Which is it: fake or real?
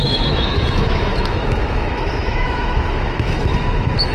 fake